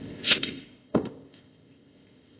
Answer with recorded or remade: remade